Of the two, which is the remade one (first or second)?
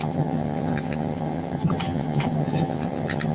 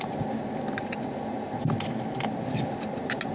first